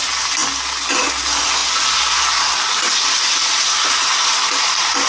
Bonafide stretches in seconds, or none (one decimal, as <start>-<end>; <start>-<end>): 0.0-5.1